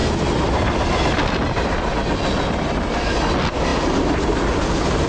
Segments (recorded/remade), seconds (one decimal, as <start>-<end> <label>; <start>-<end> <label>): 0.0-5.1 recorded